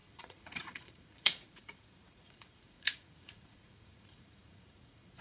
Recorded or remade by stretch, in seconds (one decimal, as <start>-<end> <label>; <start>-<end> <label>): 0.0-5.2 remade